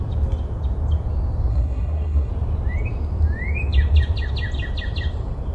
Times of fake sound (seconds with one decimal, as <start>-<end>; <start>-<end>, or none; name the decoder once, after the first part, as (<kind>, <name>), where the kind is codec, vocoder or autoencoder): 1.5-2.3 (codec, SNAC)